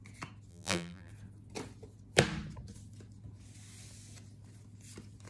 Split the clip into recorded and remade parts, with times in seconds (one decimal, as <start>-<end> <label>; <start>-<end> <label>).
0.0-0.5 recorded; 0.5-1.1 remade; 1.1-5.3 recorded